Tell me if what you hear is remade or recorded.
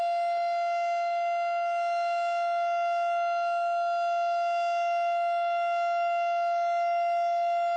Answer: recorded